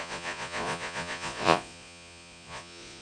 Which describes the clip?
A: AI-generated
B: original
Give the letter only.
A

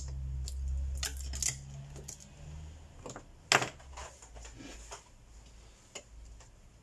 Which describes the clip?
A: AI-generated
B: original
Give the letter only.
B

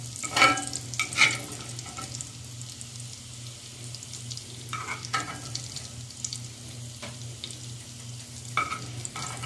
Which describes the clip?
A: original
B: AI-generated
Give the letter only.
A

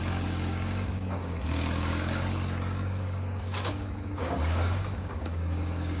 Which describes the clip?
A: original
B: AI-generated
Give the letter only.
B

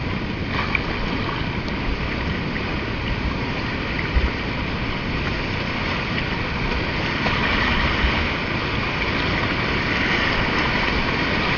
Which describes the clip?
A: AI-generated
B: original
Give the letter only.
B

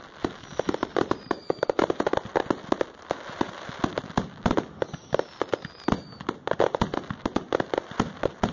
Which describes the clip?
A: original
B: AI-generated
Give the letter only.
A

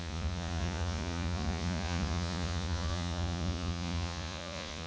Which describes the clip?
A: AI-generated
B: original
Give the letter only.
A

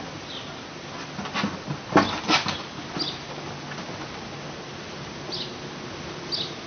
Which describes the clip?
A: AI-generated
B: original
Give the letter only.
B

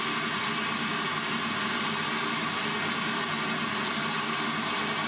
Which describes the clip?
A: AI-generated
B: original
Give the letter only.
B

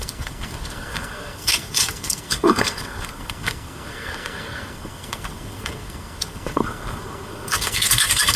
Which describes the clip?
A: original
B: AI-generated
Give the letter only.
B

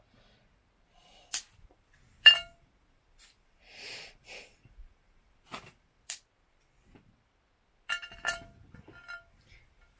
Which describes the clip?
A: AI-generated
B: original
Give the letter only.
B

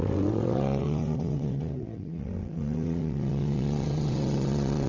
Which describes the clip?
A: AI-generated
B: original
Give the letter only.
A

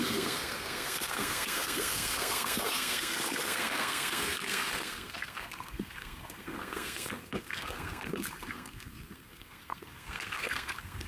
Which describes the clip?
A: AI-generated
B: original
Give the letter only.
A